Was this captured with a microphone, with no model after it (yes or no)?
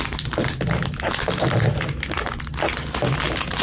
yes